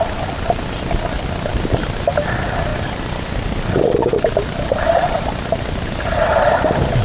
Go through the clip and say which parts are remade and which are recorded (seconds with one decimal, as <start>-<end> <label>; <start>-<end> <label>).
0.0-7.0 recorded